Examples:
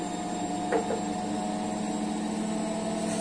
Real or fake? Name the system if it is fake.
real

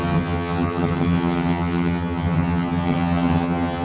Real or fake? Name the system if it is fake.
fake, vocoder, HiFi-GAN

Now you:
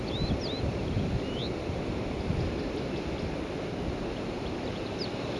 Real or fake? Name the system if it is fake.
real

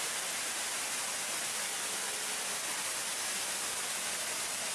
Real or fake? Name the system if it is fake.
real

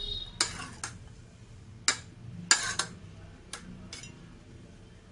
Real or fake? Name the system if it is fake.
real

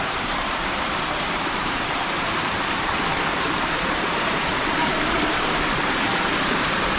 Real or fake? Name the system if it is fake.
fake, vocoder, BigVGAN v2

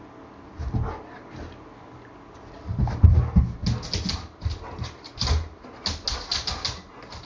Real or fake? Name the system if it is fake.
real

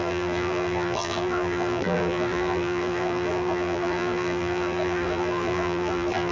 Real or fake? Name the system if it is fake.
fake, vocoder, BigVGAN v2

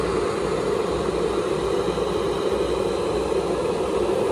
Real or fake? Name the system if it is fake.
real